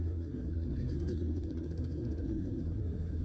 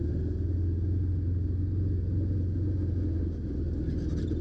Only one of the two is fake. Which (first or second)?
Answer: first